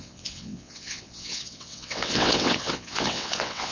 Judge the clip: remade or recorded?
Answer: remade